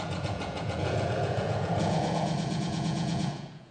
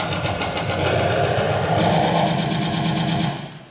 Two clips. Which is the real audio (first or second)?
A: second